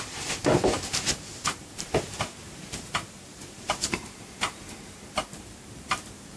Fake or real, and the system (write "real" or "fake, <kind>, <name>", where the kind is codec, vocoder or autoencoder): fake, vocoder, BigVGAN v2